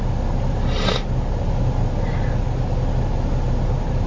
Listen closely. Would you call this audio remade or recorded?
recorded